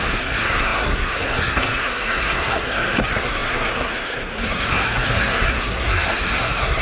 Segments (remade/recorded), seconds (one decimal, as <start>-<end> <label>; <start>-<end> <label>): 0.0-6.8 remade